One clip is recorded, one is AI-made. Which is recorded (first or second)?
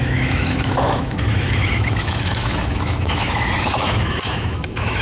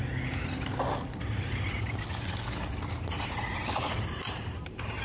second